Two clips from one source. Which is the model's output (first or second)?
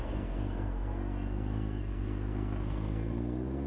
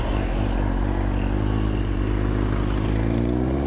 first